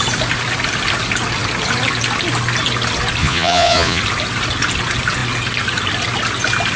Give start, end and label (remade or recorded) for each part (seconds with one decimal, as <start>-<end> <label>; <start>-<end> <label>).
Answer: 0.0-3.2 recorded; 3.2-4.0 remade; 4.0-6.8 recorded